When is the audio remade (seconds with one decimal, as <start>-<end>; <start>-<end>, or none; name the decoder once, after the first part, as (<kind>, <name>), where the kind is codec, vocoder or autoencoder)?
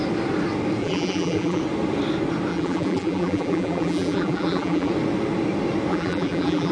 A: 0.8-1.6 (vocoder, BigVGAN v2); 2.5-4.9; 5.9-6.7